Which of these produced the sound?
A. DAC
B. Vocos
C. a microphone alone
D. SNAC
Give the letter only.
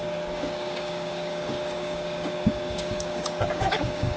A